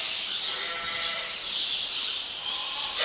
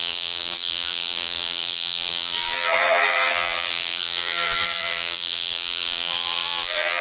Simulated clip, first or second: second